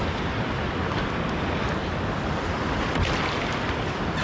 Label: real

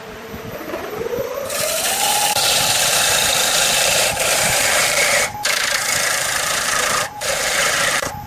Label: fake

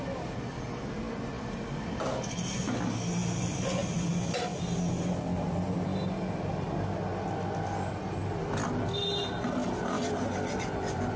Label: real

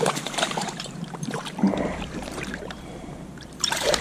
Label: fake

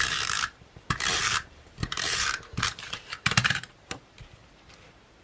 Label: fake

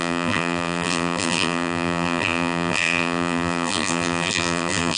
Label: fake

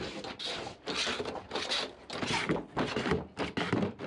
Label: real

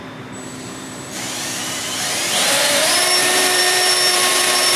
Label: fake